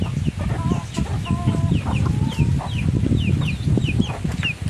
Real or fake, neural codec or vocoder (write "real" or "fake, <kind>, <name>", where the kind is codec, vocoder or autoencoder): real